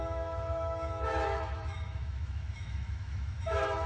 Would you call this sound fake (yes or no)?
yes